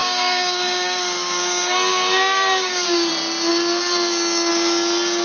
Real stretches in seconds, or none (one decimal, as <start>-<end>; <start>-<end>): 3.1-5.2